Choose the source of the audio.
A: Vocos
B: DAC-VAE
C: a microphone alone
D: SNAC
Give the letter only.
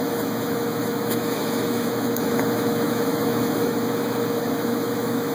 B